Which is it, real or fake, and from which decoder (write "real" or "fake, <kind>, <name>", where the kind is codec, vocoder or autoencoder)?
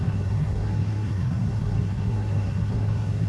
fake, codec, SNAC